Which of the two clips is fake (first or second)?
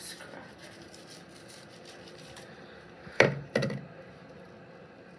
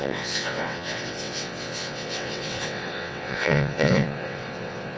second